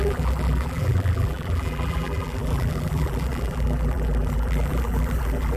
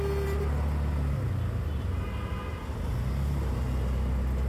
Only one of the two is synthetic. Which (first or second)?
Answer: first